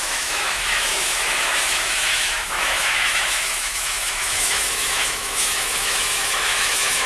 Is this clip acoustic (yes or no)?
no